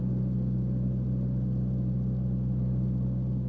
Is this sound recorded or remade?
recorded